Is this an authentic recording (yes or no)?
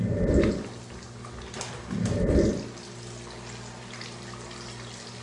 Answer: yes